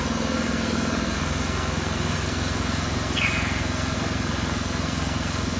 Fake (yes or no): yes